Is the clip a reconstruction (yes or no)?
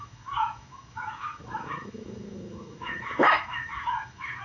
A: yes